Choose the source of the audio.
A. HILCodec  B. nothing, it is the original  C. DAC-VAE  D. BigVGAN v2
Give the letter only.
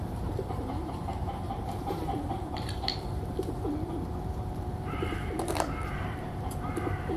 D